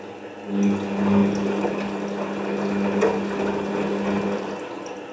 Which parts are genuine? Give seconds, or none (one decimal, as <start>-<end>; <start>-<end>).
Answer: 0.0-5.1